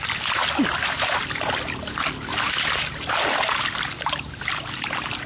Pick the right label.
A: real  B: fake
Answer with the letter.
A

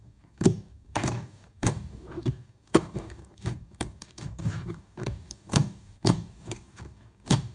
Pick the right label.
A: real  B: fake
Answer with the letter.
B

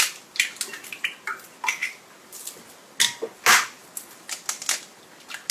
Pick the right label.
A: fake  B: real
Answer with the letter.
B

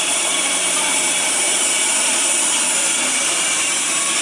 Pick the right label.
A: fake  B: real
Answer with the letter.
A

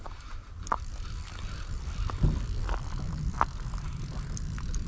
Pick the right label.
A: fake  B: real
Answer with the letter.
A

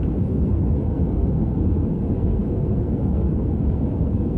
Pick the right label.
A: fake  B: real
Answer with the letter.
A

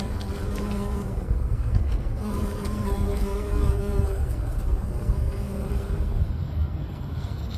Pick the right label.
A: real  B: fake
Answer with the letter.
B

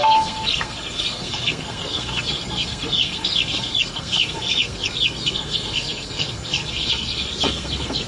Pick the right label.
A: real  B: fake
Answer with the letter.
B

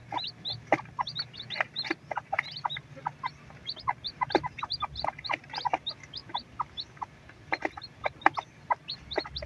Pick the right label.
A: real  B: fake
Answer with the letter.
A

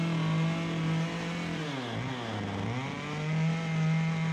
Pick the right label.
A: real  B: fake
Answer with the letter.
A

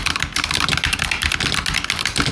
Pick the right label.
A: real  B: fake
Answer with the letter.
A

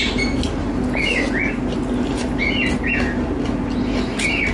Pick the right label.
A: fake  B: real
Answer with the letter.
B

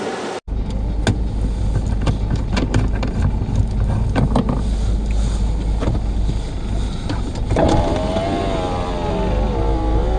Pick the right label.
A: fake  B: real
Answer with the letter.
B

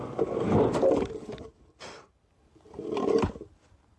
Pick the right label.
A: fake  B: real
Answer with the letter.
B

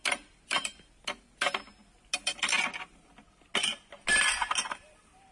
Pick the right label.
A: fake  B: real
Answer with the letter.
B